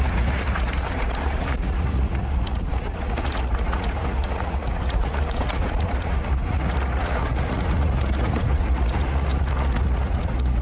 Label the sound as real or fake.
fake